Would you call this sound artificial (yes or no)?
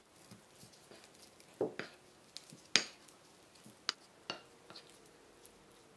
no